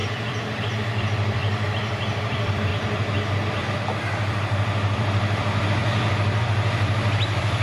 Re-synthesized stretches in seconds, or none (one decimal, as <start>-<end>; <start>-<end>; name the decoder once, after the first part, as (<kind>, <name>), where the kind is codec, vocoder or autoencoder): 0.0-2.7 (vocoder, BigVGAN v2); 3.5-5.8; 6.4-7.6